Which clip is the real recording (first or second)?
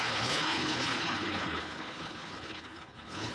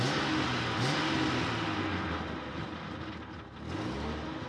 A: second